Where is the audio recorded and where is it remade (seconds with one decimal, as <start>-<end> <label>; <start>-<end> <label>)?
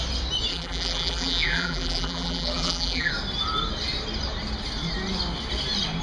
0.0-0.5 recorded; 0.5-3.1 remade; 3.1-6.0 recorded